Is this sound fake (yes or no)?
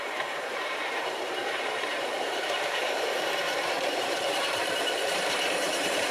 yes